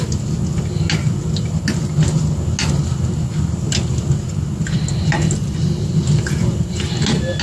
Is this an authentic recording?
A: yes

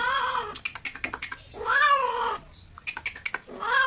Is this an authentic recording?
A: yes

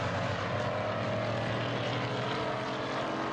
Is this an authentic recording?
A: yes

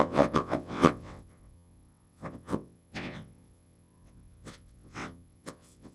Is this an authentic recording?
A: no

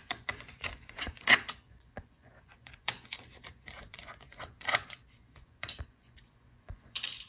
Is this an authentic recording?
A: no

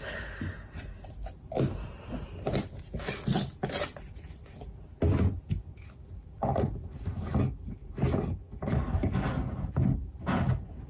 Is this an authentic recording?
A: yes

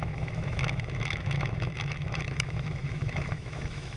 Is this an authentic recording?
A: no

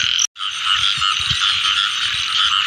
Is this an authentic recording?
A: yes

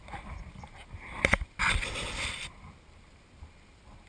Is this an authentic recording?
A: yes